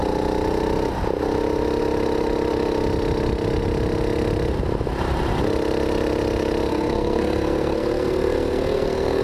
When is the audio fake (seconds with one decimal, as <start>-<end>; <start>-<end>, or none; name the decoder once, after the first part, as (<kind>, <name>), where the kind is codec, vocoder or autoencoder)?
6.7-9.2 (codec, SNAC)